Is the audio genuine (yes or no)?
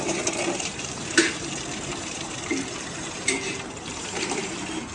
no